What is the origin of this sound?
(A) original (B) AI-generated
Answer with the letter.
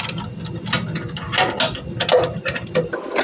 A